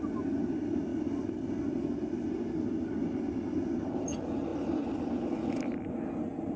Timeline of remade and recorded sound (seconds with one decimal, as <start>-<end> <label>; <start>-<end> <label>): 0.0-6.6 recorded

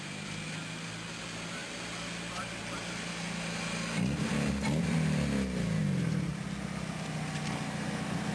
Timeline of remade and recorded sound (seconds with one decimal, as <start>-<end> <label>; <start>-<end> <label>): 0.0-8.3 recorded

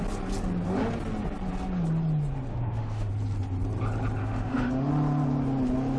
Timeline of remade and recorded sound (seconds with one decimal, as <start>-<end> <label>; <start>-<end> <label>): 0.0-2.5 recorded; 2.5-3.1 remade; 3.1-4.2 recorded; 4.2-4.9 remade; 4.9-6.0 recorded

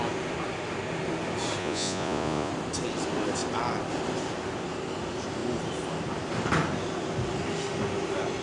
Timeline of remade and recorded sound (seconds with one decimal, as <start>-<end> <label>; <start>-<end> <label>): 0.0-1.6 recorded; 1.6-2.5 remade; 2.5-8.4 recorded

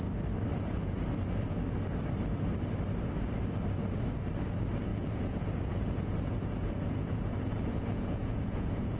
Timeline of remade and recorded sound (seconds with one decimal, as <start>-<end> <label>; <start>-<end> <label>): 0.0-0.5 recorded; 0.5-1.0 remade; 1.0-4.9 recorded; 4.9-9.0 remade

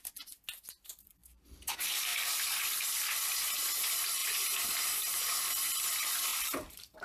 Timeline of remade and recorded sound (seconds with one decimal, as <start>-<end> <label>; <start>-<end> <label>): 0.0-1.2 recorded; 1.2-1.7 remade; 1.7-4.2 recorded; 4.2-5.2 remade; 5.2-6.3 recorded; 6.3-7.0 remade

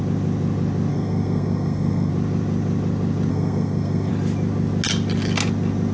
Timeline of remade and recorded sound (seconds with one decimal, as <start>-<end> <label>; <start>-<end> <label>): 0.0-0.9 recorded; 0.9-2.1 remade; 2.1-3.3 recorded; 3.3-4.1 remade; 4.1-5.9 recorded